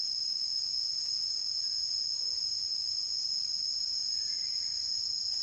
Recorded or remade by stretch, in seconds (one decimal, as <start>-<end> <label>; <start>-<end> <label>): 0.0-5.4 recorded